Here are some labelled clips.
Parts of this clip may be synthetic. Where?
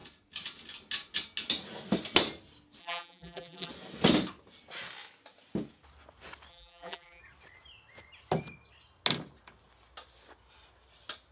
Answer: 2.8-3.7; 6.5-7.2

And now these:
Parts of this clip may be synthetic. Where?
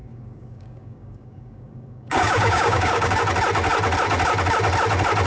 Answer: 0.0-3.2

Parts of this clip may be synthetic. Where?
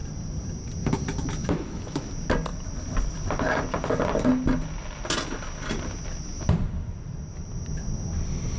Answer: 1.4-2.1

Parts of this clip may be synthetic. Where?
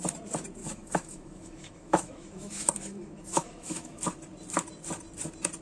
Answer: 0.6-4.0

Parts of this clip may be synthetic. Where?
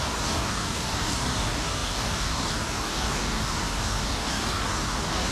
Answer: 0.0-5.3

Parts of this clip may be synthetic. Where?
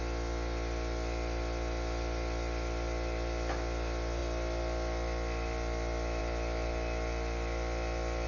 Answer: none